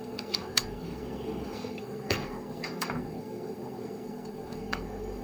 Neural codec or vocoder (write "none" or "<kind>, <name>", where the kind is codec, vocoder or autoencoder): codec, SNAC